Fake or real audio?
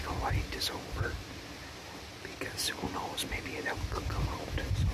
real